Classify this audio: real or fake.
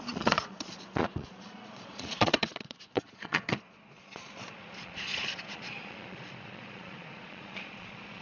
fake